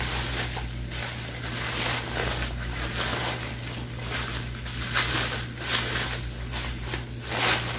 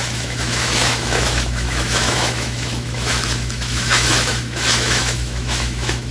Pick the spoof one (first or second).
second